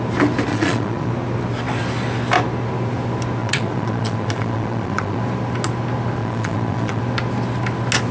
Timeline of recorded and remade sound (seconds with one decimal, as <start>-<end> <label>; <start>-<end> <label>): 0.0-0.5 recorded; 0.5-1.1 remade; 1.1-3.4 recorded; 3.4-5.2 remade; 5.2-6.2 recorded; 6.2-7.0 remade; 7.0-8.1 recorded